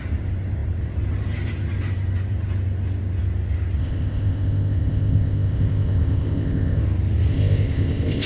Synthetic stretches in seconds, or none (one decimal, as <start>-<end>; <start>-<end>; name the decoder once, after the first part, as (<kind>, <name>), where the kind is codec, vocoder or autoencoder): 3.8-6.8 (codec, ZipCodec); 7.3-8.3